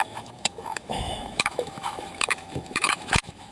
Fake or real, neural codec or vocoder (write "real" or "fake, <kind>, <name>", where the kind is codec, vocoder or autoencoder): fake, autoencoder, DAC-VAE